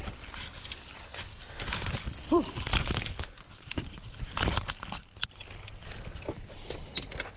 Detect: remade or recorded recorded